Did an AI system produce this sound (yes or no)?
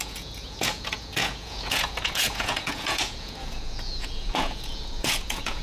yes